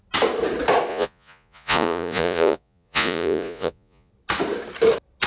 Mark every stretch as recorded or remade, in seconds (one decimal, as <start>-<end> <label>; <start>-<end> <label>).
0.0-0.9 recorded; 0.9-4.1 remade; 4.1-5.3 recorded